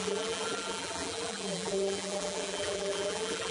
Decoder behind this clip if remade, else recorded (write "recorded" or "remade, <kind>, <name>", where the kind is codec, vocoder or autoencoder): remade, vocoder, BigVGAN v2